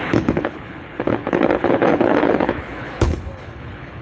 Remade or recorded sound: remade